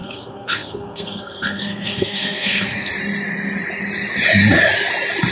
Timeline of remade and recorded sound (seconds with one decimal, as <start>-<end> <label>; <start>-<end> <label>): 0.0-2.9 remade; 2.9-5.3 recorded